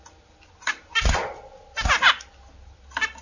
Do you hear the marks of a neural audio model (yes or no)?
no